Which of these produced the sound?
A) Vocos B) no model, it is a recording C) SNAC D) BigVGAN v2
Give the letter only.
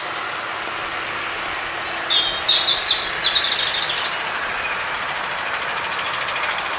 B